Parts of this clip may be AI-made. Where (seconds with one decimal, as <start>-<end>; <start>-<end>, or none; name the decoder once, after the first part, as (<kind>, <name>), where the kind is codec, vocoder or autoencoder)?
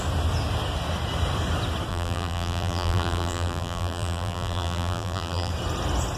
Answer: 1.9-5.5 (vocoder, BigVGAN v2)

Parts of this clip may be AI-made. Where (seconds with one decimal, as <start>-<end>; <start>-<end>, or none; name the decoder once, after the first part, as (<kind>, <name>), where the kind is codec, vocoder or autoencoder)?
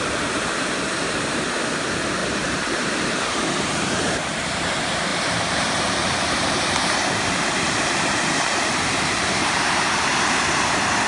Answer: 0.0-11.1 (vocoder, BigVGAN v2)